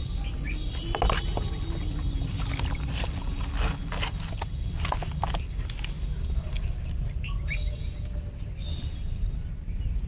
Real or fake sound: real